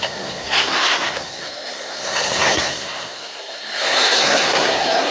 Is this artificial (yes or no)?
yes